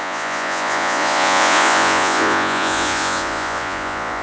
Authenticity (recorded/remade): remade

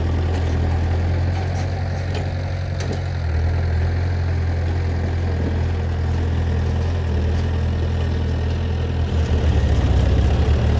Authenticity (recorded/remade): recorded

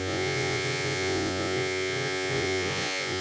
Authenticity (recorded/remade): remade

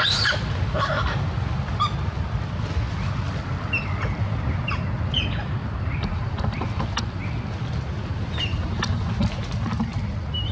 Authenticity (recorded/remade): recorded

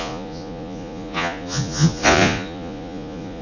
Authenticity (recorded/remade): remade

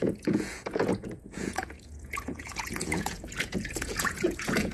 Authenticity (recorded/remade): remade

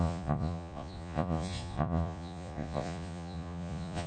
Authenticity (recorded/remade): remade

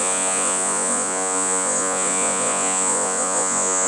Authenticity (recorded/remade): remade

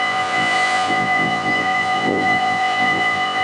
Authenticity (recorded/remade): remade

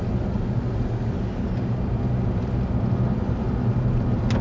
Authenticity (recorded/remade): recorded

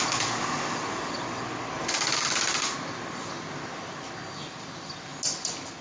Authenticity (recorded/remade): recorded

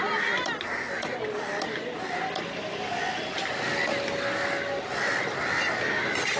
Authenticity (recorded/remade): recorded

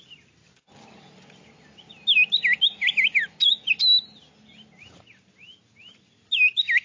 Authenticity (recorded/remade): recorded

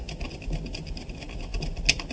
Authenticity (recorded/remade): recorded